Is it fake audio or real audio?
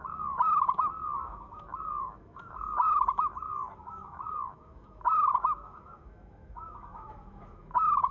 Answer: fake